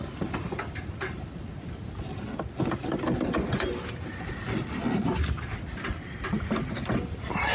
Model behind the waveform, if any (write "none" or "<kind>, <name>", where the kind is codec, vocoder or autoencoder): none